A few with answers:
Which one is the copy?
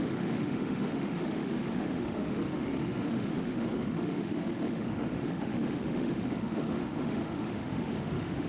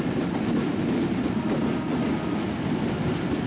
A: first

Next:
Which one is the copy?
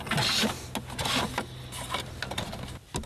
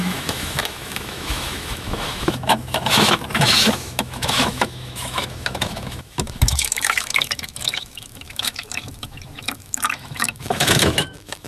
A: second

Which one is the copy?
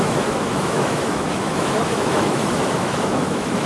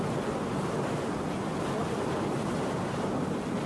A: first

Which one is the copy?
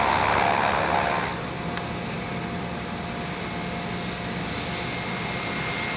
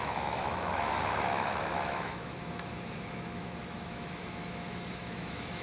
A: second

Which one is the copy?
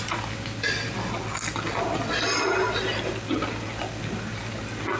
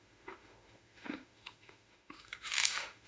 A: second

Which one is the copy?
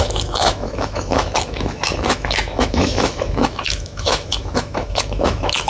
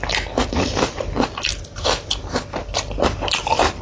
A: first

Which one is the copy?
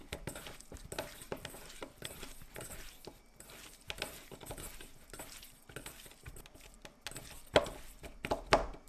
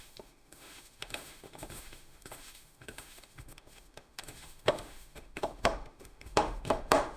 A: second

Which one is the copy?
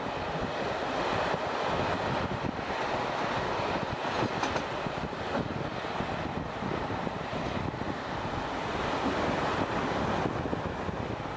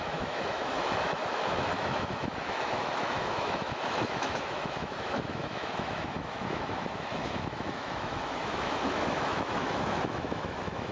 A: second